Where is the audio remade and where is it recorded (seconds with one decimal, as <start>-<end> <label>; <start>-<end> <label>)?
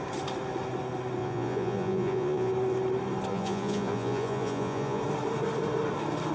0.0-1.2 recorded; 1.2-2.5 remade; 2.5-3.3 recorded; 3.3-5.0 remade; 5.0-6.3 recorded